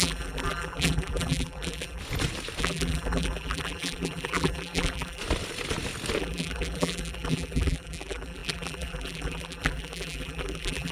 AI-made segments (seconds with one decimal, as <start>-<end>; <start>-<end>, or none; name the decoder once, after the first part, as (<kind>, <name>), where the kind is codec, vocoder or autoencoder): 0.0-2.0 (vocoder, BigVGAN v2); 2.6-5.2; 6.2-10.9

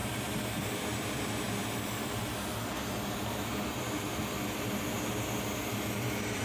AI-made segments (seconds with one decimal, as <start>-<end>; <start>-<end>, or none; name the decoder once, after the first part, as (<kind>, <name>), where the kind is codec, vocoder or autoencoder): 0.0-3.8 (vocoder, BigVGAN v2)

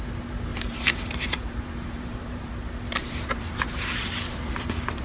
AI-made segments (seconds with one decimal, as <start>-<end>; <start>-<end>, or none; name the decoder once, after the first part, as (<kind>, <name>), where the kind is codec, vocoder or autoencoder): 0.5-2.6 (vocoder, BigVGAN v2); 3.0-4.4

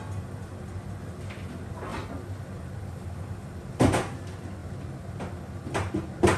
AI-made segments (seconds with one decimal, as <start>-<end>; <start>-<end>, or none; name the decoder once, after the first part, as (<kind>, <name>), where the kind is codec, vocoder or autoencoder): none

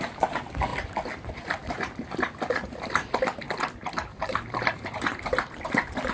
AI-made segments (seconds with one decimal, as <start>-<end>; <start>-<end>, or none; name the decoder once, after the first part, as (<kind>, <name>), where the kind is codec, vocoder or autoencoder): 0.0-0.7 (vocoder, BigVGAN v2); 4.2-6.1

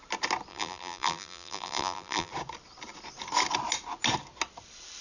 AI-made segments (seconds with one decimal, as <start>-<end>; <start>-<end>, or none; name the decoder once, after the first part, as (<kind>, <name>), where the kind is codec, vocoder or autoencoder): 0.5-2.3 (vocoder, BigVGAN v2)